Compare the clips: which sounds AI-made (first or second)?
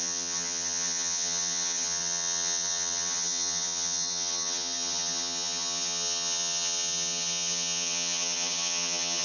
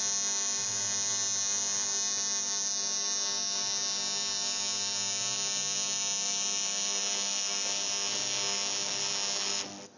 first